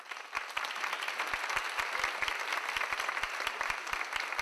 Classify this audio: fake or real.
real